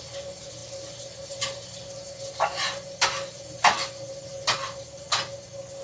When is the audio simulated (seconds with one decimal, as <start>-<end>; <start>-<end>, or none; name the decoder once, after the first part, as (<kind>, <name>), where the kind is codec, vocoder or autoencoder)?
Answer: none